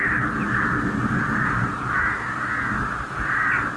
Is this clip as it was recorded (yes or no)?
yes